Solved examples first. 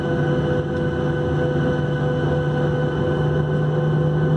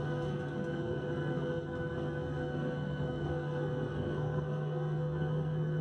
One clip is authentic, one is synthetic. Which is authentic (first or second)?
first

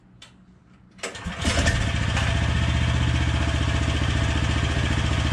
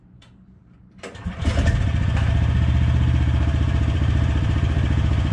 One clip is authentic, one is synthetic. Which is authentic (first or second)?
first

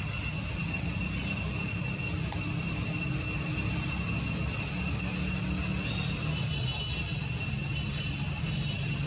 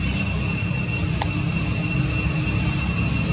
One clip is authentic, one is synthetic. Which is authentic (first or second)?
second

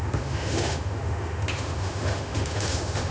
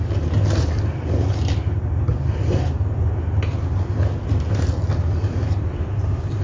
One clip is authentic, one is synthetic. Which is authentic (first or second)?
second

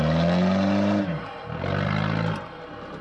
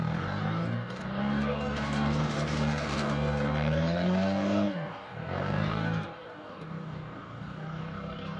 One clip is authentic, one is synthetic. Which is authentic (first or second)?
first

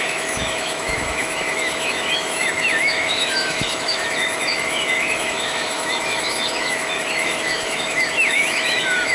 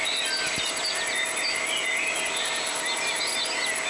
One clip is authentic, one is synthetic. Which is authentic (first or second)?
second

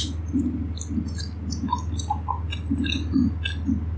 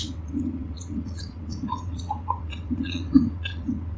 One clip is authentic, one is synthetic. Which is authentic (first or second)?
first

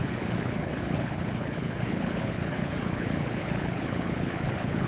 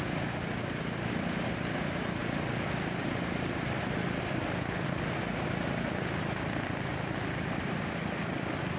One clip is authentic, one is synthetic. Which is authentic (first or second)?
second